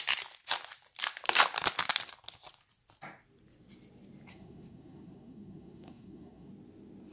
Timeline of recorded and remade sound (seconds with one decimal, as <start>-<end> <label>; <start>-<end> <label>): 0.0-4.3 recorded; 4.3-6.5 remade; 6.5-7.1 recorded